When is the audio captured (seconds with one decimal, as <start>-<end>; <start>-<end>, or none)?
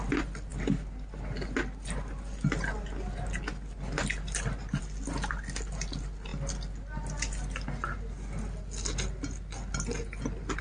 0.0-10.6